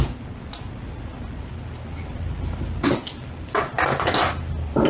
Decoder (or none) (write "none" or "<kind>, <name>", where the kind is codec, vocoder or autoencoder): none